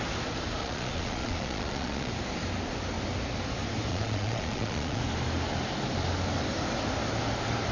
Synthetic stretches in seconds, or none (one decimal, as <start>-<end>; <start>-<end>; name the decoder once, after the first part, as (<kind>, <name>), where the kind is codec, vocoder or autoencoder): 0.6-2.1 (vocoder, Vocos); 3.9-5.0